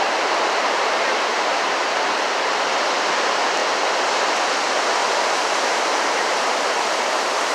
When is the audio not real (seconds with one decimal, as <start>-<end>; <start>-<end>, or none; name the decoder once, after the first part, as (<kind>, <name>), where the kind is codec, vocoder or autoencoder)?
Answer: 0.0-3.6 (vocoder, BigVGAN v2); 5.3-7.5